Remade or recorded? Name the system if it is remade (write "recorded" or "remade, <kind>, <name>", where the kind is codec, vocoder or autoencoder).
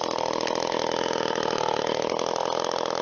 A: recorded